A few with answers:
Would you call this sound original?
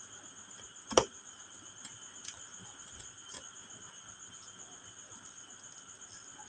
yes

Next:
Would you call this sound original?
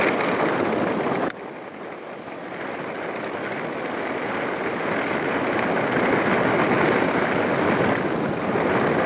yes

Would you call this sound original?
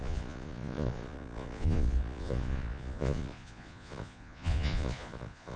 no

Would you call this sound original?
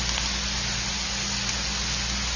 yes